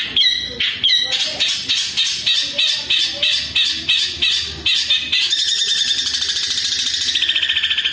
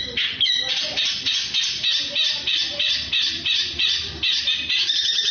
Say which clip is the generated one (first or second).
second